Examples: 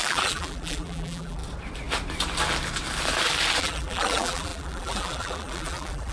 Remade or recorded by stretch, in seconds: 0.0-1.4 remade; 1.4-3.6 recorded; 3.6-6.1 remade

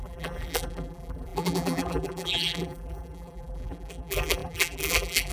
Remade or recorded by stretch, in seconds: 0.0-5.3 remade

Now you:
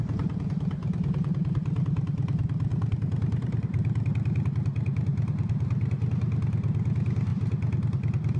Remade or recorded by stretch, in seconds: 0.0-0.8 recorded; 0.8-1.8 remade; 1.8-2.7 recorded; 2.7-4.1 remade; 4.1-5.1 recorded; 5.1-6.1 remade; 6.1-8.4 recorded

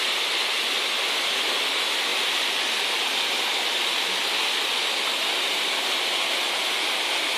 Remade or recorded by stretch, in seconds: 0.0-7.4 recorded

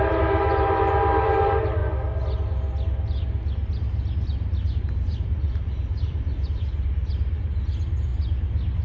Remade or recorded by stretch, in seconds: 0.0-1.8 remade; 1.8-4.8 recorded; 4.8-8.1 remade; 8.1-8.8 recorded